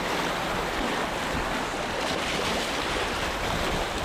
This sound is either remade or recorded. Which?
recorded